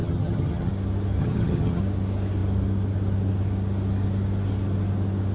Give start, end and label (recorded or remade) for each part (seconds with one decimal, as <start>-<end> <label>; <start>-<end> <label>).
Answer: 0.0-0.7 remade; 0.7-1.2 recorded; 1.2-1.8 remade; 1.8-5.3 recorded